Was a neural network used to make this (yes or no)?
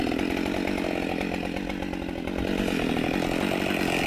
no